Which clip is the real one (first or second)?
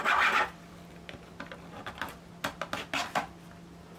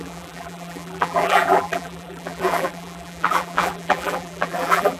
first